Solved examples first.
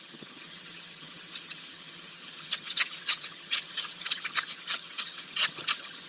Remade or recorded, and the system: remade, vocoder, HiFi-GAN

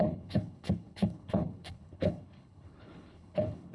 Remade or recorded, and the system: remade, codec, HILCodec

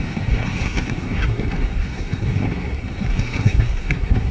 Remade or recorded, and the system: remade, codec, SNAC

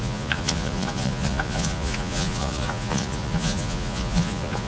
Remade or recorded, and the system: remade, vocoder, Vocos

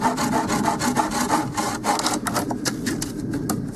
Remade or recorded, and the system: recorded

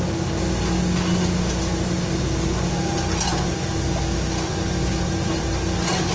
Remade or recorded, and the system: recorded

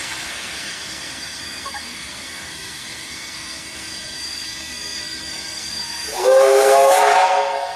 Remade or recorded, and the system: remade, codec, SNAC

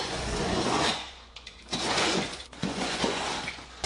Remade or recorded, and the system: remade, vocoder, Vocos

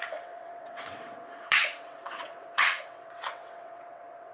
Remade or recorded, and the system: remade, vocoder, WaveNeXt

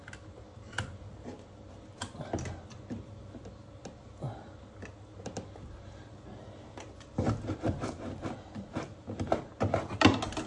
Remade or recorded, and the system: recorded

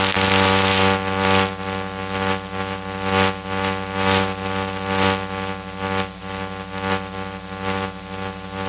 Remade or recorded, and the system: recorded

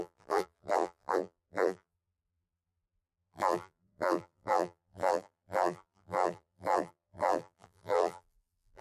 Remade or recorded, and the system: remade, vocoder, BigVGAN v2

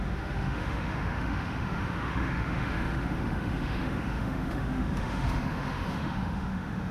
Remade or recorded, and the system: remade, autoencoder, DAC-VAE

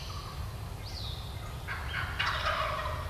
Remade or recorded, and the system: recorded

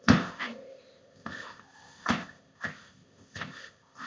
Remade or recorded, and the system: remade, codec, ZipCodec